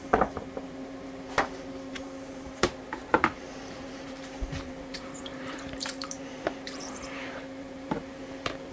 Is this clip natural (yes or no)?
no